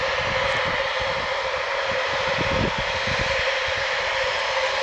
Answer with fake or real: real